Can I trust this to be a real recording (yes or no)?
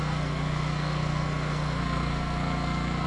no